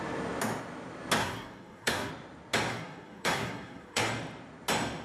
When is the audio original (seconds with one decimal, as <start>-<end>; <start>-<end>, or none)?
0.0-1.2; 2.1-2.7; 4.1-5.0